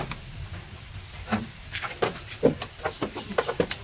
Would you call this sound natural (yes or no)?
yes